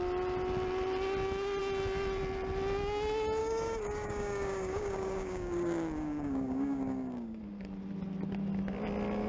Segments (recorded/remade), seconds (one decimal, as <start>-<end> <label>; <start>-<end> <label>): 0.0-3.4 recorded; 3.4-7.4 remade; 7.4-9.3 recorded

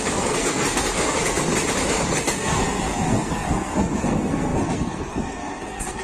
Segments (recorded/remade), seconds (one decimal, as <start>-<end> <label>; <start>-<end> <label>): 0.0-1.5 remade; 1.5-2.2 recorded; 2.2-6.0 remade

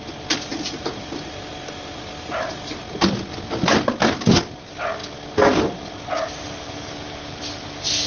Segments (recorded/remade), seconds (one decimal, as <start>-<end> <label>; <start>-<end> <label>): 0.0-8.1 recorded